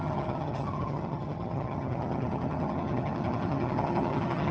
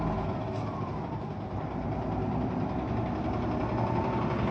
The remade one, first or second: first